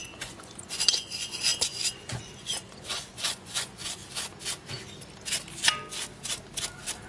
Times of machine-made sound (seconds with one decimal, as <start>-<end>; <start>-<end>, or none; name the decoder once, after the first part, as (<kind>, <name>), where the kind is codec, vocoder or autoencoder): 0.0-4.0 (vocoder, Vocos)